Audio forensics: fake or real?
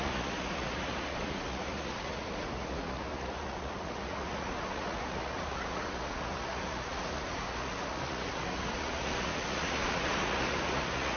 fake